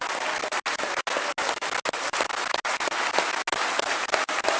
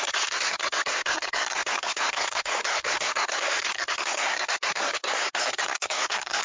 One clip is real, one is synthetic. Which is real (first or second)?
first